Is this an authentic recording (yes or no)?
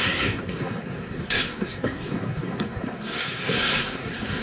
no